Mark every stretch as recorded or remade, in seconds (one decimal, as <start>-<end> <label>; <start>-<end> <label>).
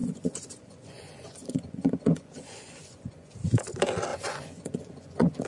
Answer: 0.0-3.3 remade; 3.3-4.1 recorded; 4.1-5.5 remade